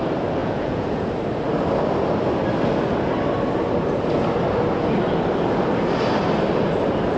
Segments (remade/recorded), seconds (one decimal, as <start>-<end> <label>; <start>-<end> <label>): 0.0-0.4 recorded; 0.4-1.1 remade; 1.1-7.2 recorded